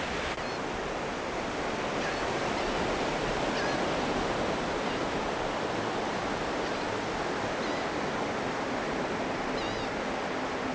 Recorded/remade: recorded